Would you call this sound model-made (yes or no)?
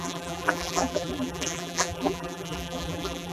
yes